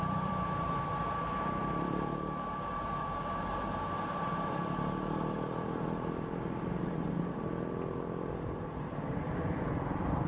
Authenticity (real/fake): fake